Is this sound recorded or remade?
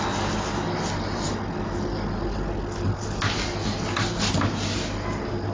recorded